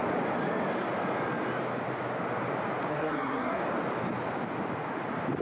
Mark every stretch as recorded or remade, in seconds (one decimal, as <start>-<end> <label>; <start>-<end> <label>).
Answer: 0.0-2.9 recorded; 2.9-3.6 remade; 3.6-5.4 recorded